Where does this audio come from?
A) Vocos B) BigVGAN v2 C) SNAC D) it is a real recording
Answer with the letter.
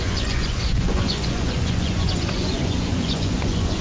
A